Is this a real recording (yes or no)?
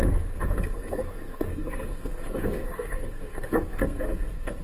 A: no